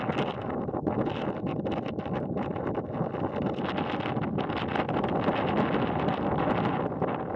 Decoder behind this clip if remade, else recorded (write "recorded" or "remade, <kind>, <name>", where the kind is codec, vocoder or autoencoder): recorded